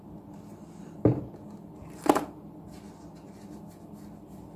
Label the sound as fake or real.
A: real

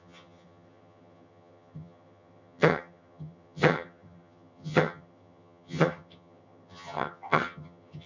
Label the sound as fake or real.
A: fake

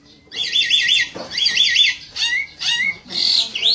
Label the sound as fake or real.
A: fake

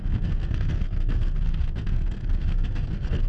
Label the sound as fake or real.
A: fake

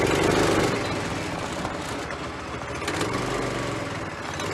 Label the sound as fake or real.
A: real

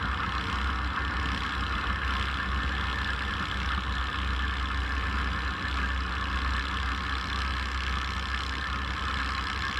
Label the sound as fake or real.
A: real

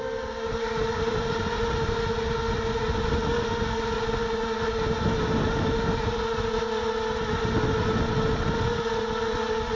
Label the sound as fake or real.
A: real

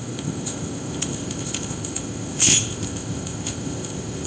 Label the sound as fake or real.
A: fake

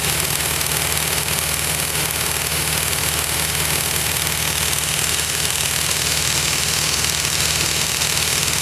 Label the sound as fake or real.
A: fake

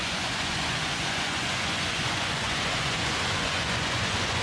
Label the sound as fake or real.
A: fake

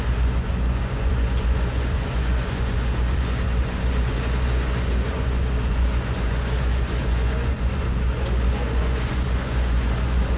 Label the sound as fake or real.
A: fake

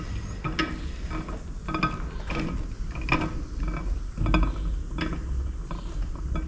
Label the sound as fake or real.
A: real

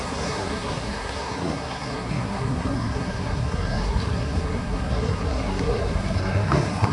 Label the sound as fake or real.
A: fake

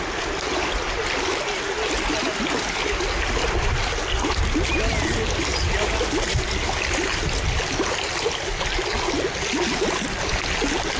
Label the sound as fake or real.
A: real